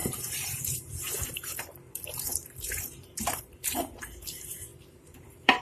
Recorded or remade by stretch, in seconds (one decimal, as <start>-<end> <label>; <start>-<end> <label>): 0.0-5.6 remade